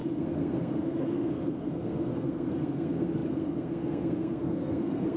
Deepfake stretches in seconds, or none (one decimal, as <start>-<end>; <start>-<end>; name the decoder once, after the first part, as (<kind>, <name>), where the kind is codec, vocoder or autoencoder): 0.0-5.2 (codec, SNAC)